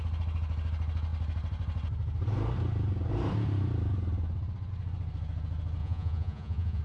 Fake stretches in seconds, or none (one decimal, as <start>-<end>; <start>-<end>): 5.8-6.8